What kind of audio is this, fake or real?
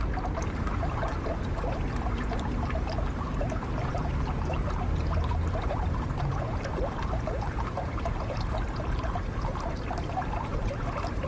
fake